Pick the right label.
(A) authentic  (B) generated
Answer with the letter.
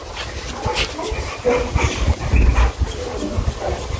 A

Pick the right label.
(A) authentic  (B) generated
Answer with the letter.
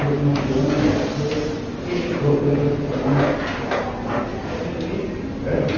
A